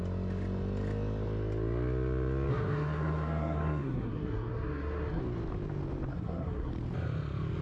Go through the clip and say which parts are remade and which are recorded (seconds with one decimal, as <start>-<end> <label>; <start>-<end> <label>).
0.0-2.5 recorded; 2.5-5.2 remade; 5.2-6.1 recorded; 6.1-6.7 remade; 6.7-7.6 recorded